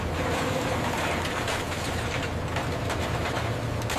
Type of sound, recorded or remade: recorded